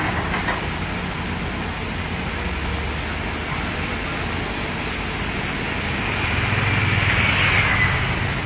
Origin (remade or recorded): recorded